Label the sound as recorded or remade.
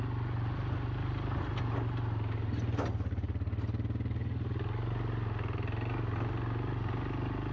recorded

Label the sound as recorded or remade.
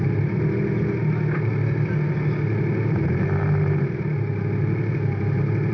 recorded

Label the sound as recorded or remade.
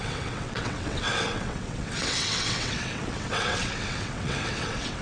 remade